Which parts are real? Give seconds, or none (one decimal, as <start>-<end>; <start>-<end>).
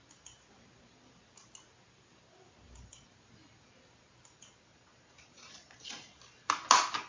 0.0-4.7; 6.2-7.1